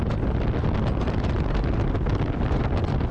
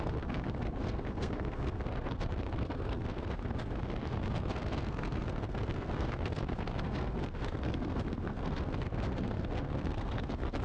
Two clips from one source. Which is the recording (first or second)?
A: first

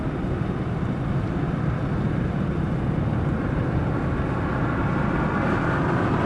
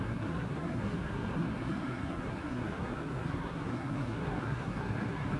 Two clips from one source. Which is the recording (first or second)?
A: first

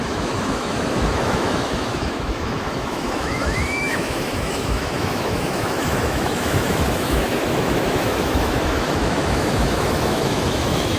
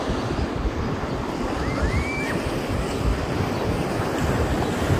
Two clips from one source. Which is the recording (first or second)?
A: second